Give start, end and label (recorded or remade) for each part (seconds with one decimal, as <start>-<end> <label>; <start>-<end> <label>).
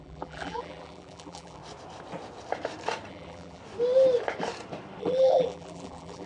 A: 0.0-1.6 remade; 1.6-3.1 recorded; 3.1-3.6 remade; 3.6-5.0 recorded; 5.0-6.3 remade